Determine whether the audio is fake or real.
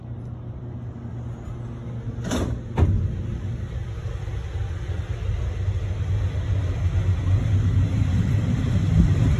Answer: real